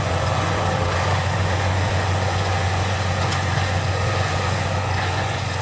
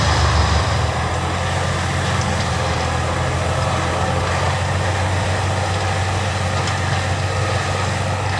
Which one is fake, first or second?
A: first